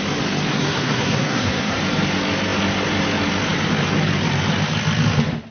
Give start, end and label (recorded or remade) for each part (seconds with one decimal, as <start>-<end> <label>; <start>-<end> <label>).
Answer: 0.0-0.5 recorded; 0.5-1.8 remade; 1.8-5.5 recorded